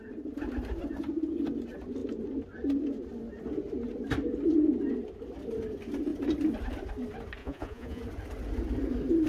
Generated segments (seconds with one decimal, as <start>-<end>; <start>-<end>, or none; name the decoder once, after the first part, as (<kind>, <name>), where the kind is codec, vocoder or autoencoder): 7.4-8.0 (vocoder, Vocos)